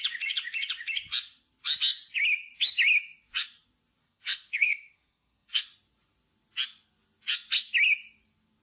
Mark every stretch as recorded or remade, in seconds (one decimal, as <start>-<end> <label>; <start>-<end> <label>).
0.0-4.0 recorded; 4.0-5.6 remade; 5.6-8.6 recorded